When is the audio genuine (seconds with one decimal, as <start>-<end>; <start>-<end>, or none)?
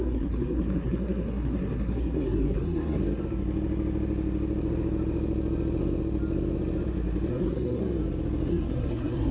3.0-7.3; 7.8-8.5